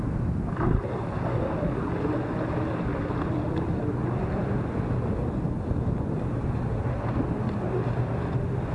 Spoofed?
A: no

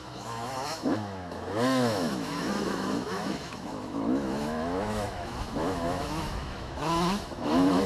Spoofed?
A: yes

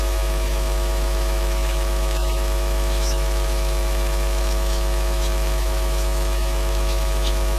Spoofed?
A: yes